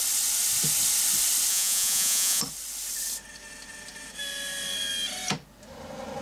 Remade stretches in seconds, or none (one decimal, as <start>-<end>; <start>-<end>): 1.5-2.4